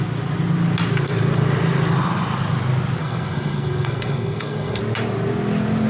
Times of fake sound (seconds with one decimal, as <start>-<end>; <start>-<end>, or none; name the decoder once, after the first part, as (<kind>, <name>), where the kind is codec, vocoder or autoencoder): 3.0-4.8 (codec, SNAC)